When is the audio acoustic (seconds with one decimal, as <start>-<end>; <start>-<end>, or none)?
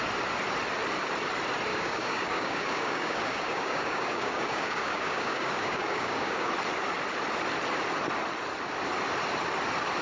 0.0-1.7; 6.5-10.0